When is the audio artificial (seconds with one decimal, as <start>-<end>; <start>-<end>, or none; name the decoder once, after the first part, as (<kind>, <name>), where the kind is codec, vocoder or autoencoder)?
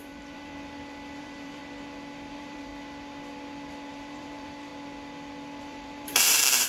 0.0-0.5 (vocoder, BigVGAN v2); 1.2-1.6; 2.3-2.7; 3.9-4.7; 5.6-6.7